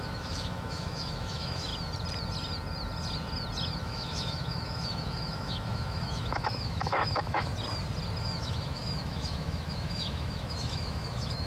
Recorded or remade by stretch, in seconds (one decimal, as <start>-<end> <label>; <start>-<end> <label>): 0.0-1.7 remade; 1.7-3.8 recorded; 3.8-7.5 remade; 7.5-8.2 recorded; 8.2-11.5 remade